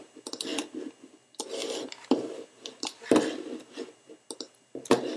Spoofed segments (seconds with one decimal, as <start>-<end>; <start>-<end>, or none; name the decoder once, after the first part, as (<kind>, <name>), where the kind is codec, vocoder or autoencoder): none